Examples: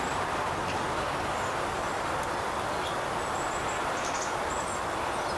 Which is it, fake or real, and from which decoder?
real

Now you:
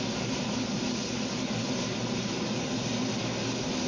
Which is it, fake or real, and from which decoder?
real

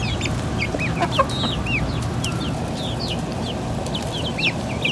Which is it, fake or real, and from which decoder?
real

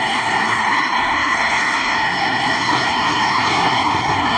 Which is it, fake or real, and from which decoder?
fake, codec, SNAC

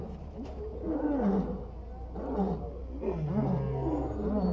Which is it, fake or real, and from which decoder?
real